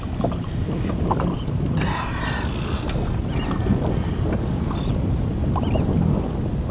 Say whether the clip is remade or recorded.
recorded